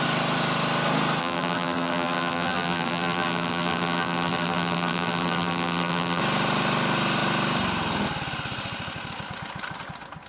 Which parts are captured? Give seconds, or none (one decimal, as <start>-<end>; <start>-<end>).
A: 0.0-1.2; 6.2-10.3